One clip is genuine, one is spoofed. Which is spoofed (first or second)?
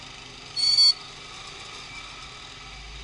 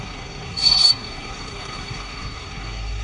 second